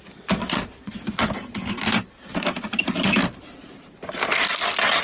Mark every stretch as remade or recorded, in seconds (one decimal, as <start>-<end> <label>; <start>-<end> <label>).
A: 0.0-0.4 recorded; 0.4-1.0 remade; 1.0-5.0 recorded